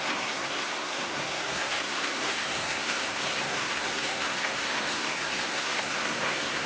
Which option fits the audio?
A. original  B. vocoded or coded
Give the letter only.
B